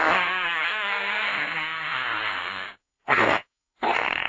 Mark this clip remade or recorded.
remade